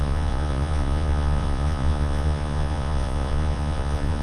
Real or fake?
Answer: fake